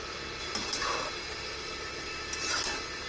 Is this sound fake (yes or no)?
no